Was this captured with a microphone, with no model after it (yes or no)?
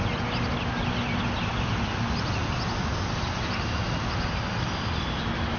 yes